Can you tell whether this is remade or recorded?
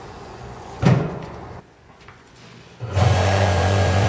remade